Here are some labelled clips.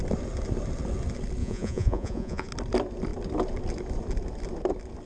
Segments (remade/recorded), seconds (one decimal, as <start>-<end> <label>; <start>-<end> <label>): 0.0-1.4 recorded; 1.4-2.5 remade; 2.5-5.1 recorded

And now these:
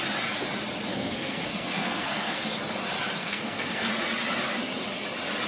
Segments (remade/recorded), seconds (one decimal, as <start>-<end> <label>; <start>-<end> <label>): 0.0-0.9 recorded; 0.9-2.6 remade; 2.6-3.2 recorded; 3.2-3.9 remade; 3.9-5.5 recorded

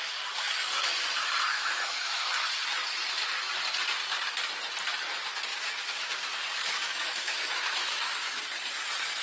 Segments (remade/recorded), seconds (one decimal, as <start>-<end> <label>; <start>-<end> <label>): 0.0-1.5 recorded; 1.5-2.4 remade; 2.4-5.5 recorded; 5.5-6.1 remade; 6.1-6.5 recorded; 6.5-8.4 remade; 8.4-9.2 recorded